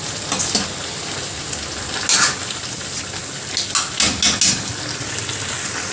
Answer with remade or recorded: recorded